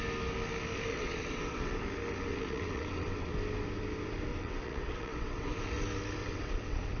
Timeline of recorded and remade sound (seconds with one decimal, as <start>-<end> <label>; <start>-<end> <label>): 0.0-0.9 recorded; 0.9-1.8 remade; 1.8-2.3 recorded; 2.3-3.3 remade; 3.3-4.3 recorded; 4.3-5.6 remade; 5.6-6.2 recorded; 6.2-7.0 remade